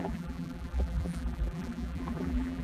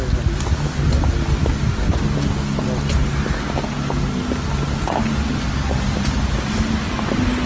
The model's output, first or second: first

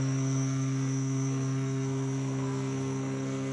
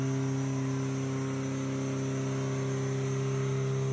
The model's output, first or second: first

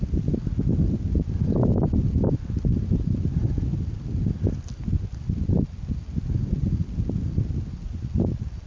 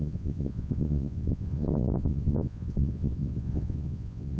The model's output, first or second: second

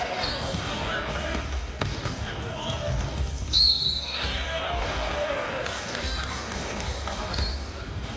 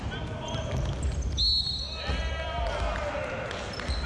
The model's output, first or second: first